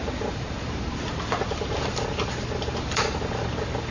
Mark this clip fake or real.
fake